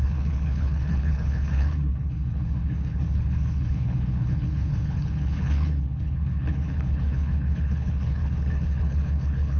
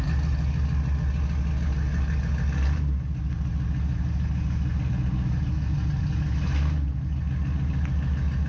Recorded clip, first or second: second